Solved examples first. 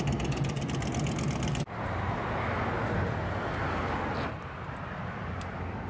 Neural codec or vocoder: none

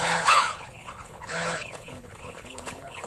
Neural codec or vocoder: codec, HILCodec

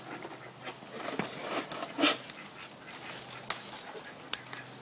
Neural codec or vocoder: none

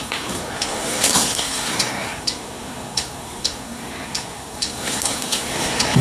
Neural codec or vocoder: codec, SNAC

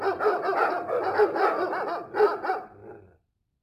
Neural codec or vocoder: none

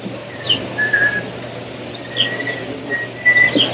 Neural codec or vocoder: none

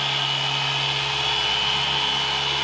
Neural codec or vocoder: none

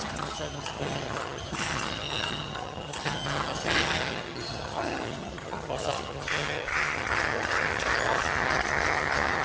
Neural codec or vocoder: vocoder, HiFi-GAN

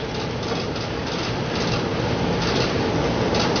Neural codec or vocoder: none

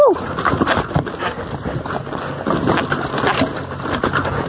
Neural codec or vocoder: none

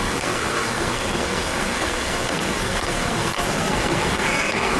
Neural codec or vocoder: codec, SNAC